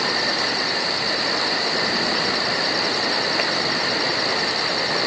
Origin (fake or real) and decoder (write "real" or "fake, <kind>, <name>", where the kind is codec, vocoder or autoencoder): real